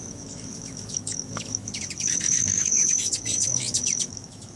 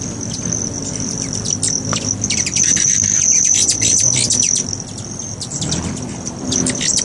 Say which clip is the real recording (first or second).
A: second